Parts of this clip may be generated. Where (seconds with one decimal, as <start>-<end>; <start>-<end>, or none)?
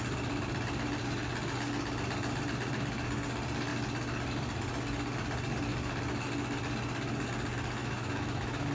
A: 7.8-8.7